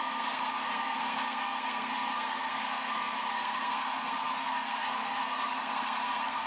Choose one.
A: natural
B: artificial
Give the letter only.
B